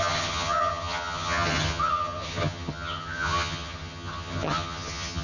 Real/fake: fake